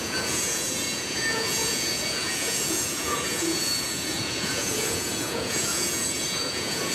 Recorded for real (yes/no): no